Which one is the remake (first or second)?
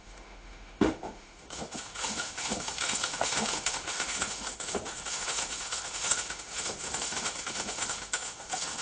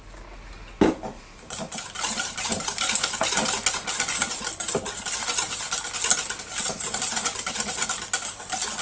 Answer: first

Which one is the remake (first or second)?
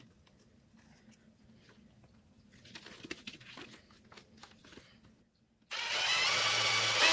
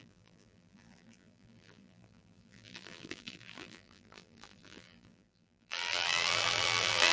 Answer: second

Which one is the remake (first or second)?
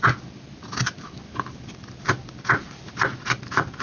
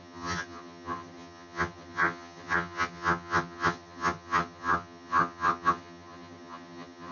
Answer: second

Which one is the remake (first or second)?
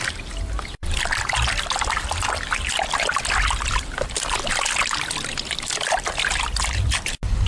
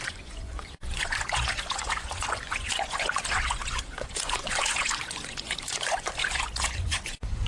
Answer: second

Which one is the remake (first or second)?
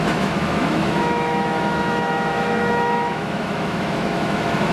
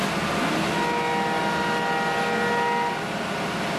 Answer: first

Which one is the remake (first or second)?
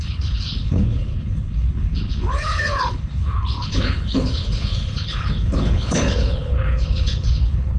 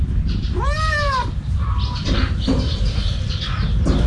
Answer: first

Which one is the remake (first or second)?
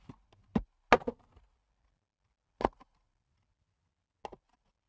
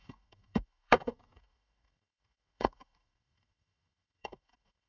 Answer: second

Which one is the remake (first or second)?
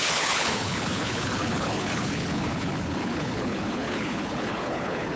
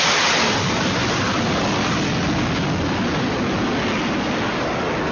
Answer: first